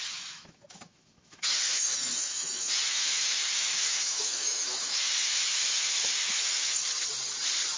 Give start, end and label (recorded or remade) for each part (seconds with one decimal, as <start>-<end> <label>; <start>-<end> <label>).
0.0-6.8 remade; 6.8-7.8 recorded